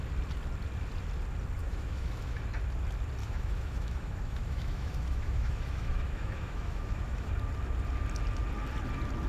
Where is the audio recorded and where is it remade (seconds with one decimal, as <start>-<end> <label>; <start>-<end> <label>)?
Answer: 0.0-1.6 recorded; 1.6-2.4 remade; 2.4-3.2 recorded; 3.2-7.3 remade; 7.3-9.3 recorded